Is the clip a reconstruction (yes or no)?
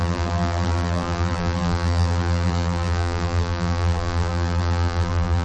yes